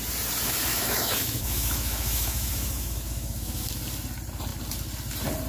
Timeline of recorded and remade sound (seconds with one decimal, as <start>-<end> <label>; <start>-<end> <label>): 0.0-0.7 recorded; 0.7-3.7 remade; 3.7-5.5 recorded